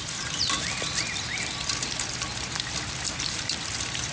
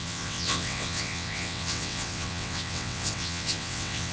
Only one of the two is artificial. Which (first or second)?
second